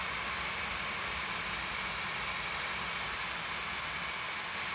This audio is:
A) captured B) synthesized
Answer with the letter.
A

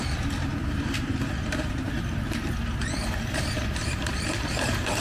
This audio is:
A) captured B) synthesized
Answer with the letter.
B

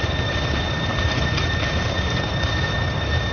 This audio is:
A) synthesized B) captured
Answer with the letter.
B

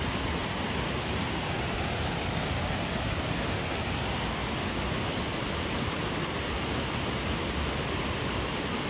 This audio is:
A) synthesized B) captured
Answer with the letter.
B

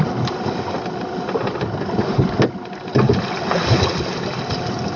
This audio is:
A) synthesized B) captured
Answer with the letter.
B